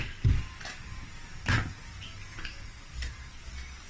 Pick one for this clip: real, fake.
real